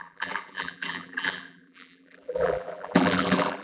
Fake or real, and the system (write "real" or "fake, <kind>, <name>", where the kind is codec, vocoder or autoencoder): fake, vocoder, BigVGAN v2